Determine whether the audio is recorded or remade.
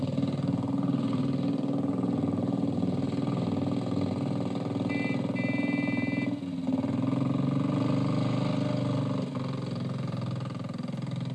recorded